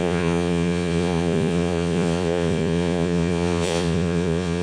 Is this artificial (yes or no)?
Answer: yes